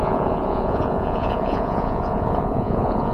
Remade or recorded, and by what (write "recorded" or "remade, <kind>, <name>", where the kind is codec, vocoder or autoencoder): remade, vocoder, Vocos